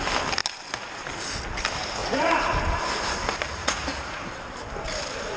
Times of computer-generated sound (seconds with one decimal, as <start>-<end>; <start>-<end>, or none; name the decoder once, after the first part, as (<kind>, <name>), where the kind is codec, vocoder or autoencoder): 2.0-2.6 (vocoder, Vocos); 3.6-4.3